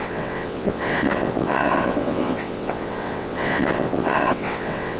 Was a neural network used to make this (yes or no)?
yes